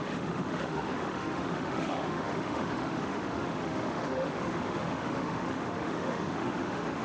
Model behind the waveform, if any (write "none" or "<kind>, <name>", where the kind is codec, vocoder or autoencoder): autoencoder, DAC-VAE